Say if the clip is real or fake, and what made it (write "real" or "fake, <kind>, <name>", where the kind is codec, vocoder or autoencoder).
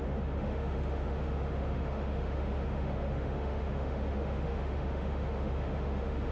fake, autoencoder, DAC-VAE